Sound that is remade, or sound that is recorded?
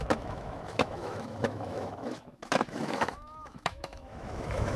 remade